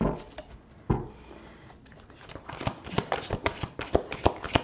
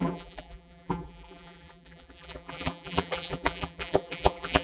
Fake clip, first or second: second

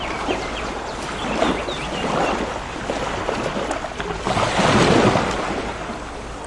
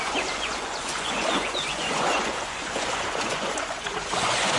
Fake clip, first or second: second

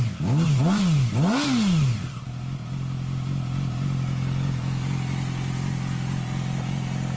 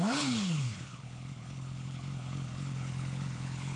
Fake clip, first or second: second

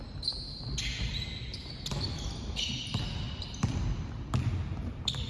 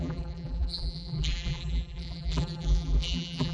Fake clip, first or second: second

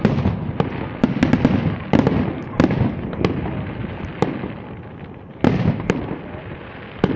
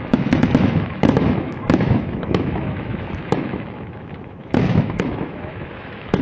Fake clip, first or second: second